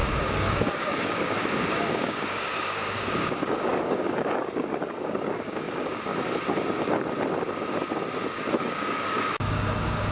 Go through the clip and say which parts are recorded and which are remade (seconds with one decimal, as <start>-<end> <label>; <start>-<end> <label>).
0.0-6.1 remade; 6.1-8.6 recorded; 8.6-10.1 remade